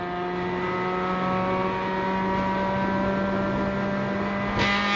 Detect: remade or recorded recorded